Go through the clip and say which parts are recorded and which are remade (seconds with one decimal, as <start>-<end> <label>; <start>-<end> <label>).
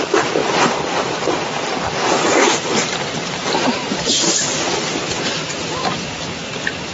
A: 0.0-0.4 recorded; 0.4-4.5 remade; 4.5-6.9 recorded